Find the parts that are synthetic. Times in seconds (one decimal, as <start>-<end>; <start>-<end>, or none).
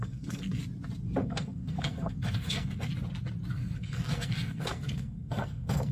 0.0-0.6; 1.2-2.9; 3.5-5.9